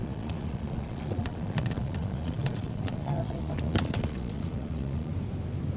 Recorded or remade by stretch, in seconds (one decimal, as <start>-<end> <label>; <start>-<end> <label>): 0.0-5.1 remade; 5.1-5.8 recorded